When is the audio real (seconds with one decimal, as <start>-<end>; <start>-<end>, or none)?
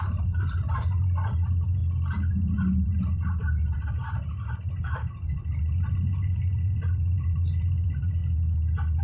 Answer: 1.8-2.3; 8.2-9.0